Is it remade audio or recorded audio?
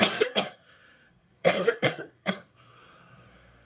remade